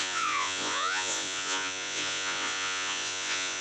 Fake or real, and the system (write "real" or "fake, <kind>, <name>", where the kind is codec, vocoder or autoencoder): fake, vocoder, Vocos